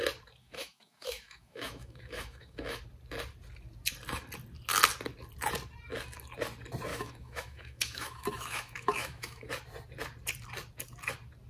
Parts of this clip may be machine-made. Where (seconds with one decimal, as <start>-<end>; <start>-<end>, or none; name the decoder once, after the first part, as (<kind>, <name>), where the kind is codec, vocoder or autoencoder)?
0.4-2.8 (autoencoder, DAC-VAE); 6.9-9.5